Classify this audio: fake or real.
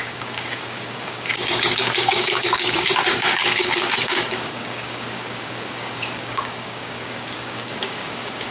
fake